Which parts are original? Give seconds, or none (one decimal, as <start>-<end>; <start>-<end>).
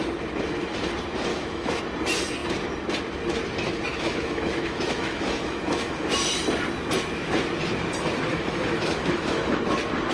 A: 0.0-1.3; 1.8-3.9; 6.1-8.3; 9.6-10.1